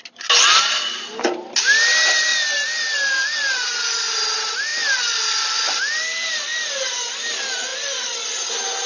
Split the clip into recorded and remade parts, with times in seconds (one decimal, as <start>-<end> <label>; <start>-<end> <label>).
0.0-8.9 recorded